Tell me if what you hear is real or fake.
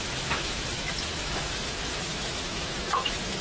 fake